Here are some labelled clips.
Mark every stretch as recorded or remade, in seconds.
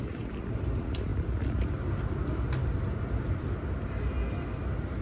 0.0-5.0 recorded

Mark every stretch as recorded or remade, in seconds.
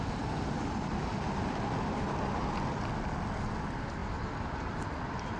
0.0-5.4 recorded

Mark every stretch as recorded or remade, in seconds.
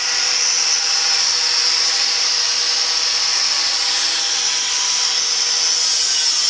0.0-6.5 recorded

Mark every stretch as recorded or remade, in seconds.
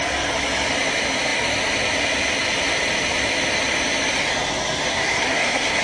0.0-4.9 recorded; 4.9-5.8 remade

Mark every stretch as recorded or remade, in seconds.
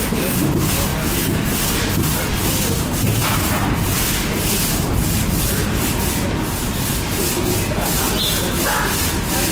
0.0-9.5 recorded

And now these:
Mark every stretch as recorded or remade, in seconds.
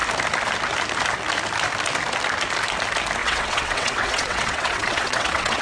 0.0-3.2 recorded; 3.2-5.6 remade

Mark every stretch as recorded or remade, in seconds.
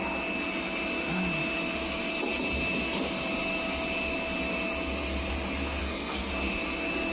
0.0-5.8 recorded; 5.8-6.3 remade; 6.3-7.1 recorded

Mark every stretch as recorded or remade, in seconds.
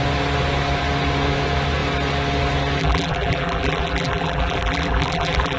0.0-2.8 recorded; 2.8-5.6 remade